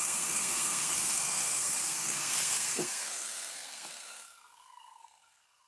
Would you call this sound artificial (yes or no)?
yes